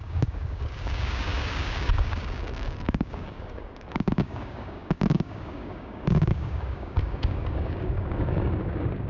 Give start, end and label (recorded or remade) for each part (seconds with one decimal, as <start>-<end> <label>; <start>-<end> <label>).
0.0-9.1 remade